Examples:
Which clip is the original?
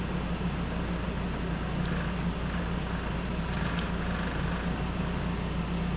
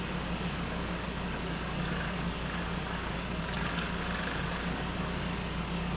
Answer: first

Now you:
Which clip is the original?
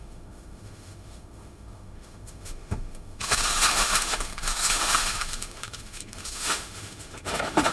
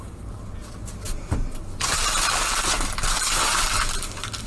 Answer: second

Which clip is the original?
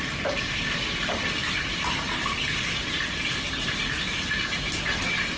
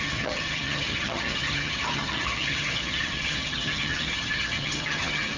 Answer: first